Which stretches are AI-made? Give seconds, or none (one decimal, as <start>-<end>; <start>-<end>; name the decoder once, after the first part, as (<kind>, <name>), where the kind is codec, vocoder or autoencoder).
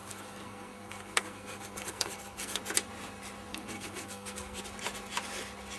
0.0-2.6 (codec, SNAC); 3.5-4.6